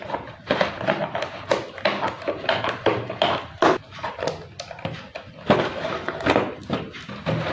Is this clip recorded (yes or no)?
yes